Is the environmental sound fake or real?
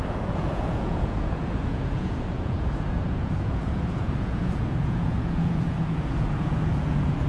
fake